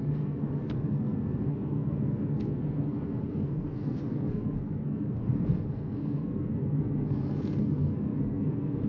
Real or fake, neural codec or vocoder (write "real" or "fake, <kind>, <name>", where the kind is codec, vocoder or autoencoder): fake, codec, SNAC